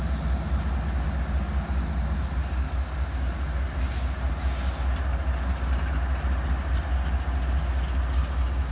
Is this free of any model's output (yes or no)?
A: yes